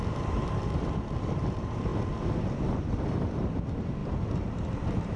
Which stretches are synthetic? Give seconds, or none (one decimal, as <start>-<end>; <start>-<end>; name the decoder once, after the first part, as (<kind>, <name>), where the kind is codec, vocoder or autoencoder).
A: 0.0-1.9 (vocoder, BigVGAN v2); 2.4-4.0; 4.7-5.2